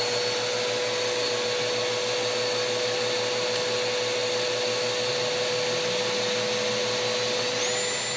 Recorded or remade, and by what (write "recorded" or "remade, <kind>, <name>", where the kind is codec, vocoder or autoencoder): recorded